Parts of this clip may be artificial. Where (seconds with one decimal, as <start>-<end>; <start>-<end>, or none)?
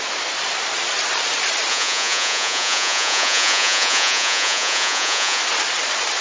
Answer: 1.7-5.4